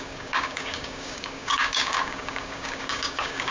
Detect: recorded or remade remade